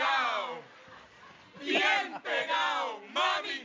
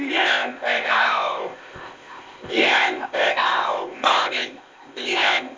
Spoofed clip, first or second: second